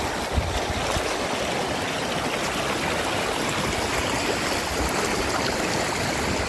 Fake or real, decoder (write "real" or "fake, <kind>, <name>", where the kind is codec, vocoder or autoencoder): real